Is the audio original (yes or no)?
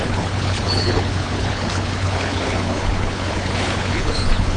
no